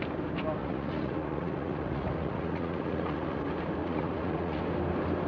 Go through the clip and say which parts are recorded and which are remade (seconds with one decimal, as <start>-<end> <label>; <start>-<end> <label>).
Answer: 0.0-0.6 recorded; 0.6-3.4 remade; 3.4-3.8 recorded; 3.8-4.6 remade; 4.6-5.3 recorded